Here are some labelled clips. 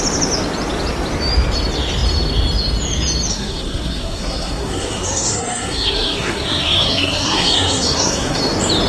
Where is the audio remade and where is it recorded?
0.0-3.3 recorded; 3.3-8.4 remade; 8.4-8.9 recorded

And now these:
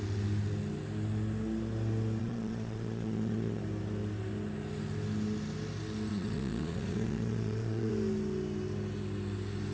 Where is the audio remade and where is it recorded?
0.0-2.2 recorded; 2.2-3.6 remade; 3.6-6.1 recorded; 6.1-7.9 remade; 7.9-9.7 recorded

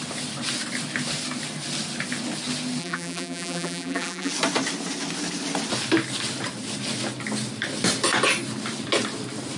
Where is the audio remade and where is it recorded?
0.0-2.8 recorded; 2.8-4.3 remade; 4.3-9.6 recorded

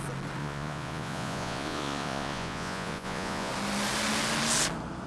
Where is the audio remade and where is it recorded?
0.0-0.4 recorded; 0.4-3.5 remade; 3.5-5.1 recorded

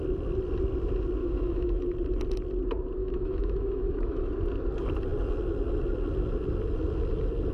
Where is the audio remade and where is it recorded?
0.0-1.2 recorded; 1.2-1.8 remade; 1.8-3.0 recorded; 3.0-4.3 remade; 4.3-7.5 recorded

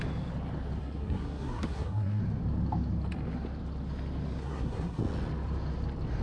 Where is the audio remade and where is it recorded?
0.0-0.8 recorded; 0.8-2.2 remade; 2.2-4.4 recorded; 4.4-5.0 remade; 5.0-6.2 recorded